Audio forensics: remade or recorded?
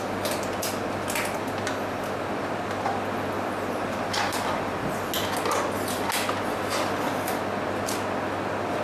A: recorded